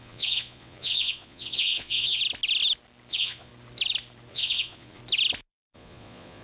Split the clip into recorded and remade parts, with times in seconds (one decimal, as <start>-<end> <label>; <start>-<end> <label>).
0.0-2.2 remade; 2.2-3.1 recorded; 3.1-3.5 remade; 3.5-4.3 recorded; 4.3-5.0 remade; 5.0-5.5 recorded; 5.5-6.4 remade